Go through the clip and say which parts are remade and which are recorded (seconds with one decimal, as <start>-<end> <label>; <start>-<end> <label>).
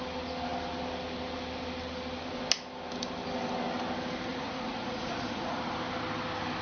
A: 0.0-4.3 recorded; 4.3-5.6 remade; 5.6-6.6 recorded